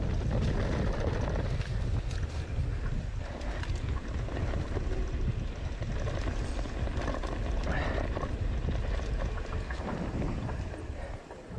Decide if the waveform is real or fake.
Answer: real